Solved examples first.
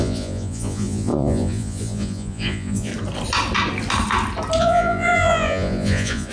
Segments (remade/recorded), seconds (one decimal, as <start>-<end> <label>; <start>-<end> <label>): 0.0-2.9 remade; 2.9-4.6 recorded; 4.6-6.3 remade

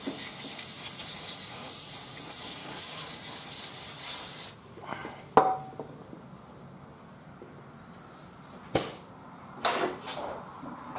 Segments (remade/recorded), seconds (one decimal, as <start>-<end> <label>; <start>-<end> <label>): 0.0-0.9 recorded; 0.9-3.2 remade; 3.2-11.0 recorded

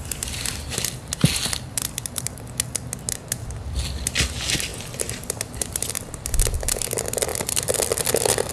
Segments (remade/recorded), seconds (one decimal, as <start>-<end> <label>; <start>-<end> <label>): 0.0-8.5 recorded

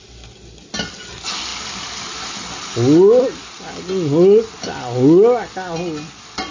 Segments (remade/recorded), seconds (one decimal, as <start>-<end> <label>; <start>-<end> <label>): 0.0-6.5 recorded

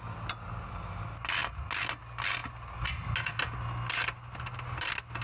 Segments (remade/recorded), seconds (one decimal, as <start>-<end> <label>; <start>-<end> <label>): 0.0-5.2 recorded

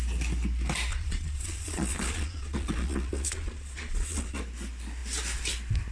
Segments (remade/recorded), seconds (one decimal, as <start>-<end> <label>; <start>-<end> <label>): 0.0-0.9 recorded; 0.9-4.4 remade; 4.4-5.9 recorded